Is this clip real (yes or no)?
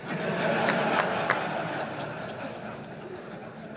yes